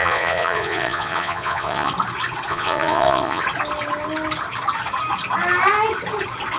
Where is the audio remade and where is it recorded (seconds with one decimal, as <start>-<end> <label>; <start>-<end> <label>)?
0.0-1.9 remade; 1.9-2.5 recorded; 2.5-3.4 remade; 3.4-6.6 recorded